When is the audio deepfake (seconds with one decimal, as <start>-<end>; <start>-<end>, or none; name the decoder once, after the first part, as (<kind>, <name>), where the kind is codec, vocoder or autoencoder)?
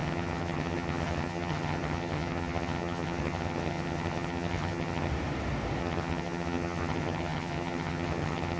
0.0-5.1 (vocoder, HiFi-GAN); 5.8-8.6